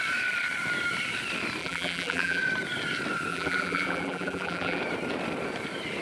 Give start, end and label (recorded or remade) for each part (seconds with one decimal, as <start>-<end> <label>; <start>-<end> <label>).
0.0-1.6 recorded; 1.6-2.4 remade; 2.4-3.3 recorded; 3.3-4.8 remade; 4.8-6.0 recorded